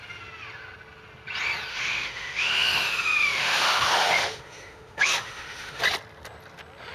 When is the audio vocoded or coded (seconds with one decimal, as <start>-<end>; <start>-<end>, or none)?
1.7-5.8